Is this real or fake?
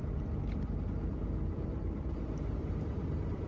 fake